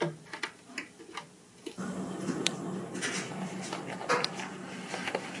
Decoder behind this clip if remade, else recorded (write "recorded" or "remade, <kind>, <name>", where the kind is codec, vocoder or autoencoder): recorded